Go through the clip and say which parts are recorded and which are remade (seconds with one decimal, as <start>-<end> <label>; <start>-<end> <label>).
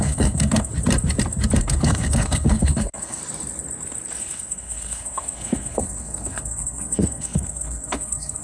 0.0-0.7 remade; 0.7-1.6 recorded; 1.6-3.2 remade; 3.2-4.2 recorded; 4.2-8.4 remade